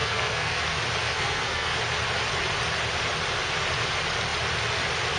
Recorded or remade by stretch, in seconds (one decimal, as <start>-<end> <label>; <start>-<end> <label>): 0.0-0.6 remade; 0.6-1.0 recorded; 1.0-1.8 remade; 1.8-5.2 recorded